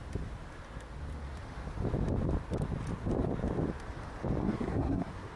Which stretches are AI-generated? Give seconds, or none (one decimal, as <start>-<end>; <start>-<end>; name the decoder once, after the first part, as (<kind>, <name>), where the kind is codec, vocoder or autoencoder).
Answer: 4.4-5.4 (codec, SNAC)